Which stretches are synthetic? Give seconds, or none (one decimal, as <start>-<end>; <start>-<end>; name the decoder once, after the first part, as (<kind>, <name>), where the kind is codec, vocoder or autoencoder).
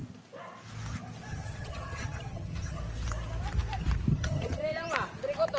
1.3-2.8 (vocoder, HiFi-GAN); 4.1-4.6